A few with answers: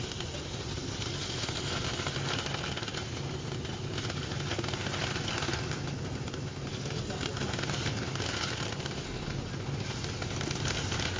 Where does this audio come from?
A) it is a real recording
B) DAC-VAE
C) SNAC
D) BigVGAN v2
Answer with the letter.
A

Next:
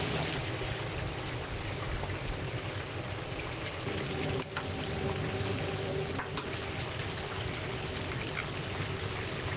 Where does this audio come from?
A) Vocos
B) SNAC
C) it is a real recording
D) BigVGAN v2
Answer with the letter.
C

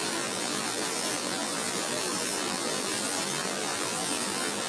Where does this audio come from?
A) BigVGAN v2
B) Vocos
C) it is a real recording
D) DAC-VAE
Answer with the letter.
A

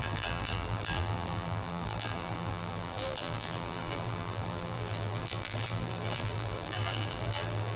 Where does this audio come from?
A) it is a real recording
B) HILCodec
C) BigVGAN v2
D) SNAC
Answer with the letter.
C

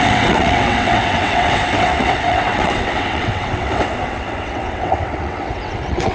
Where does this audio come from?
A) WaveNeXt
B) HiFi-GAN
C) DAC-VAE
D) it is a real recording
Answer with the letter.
A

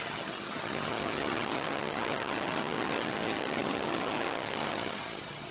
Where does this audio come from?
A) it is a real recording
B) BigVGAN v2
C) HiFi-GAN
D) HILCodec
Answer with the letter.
C